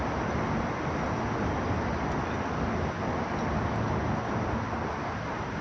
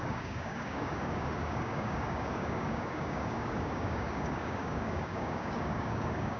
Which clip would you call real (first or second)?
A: first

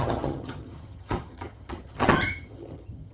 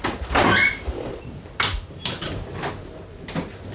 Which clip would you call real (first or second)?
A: second